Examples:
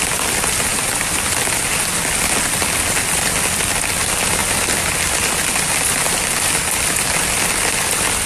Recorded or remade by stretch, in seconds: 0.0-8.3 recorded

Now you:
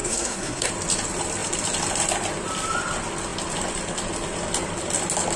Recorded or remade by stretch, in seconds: 0.0-0.7 remade; 0.7-5.4 recorded